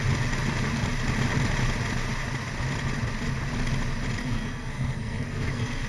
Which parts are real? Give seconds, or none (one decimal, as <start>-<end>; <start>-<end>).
0.0-4.2